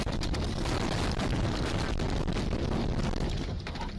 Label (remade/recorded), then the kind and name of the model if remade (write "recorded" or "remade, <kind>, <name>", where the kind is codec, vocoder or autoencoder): recorded